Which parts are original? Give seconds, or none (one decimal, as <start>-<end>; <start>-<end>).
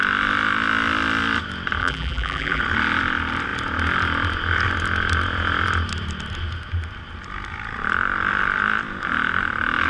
0.0-1.8; 2.6-9.9